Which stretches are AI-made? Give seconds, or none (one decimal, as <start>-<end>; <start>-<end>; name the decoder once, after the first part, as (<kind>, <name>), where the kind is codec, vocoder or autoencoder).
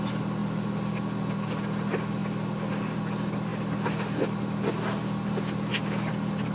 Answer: none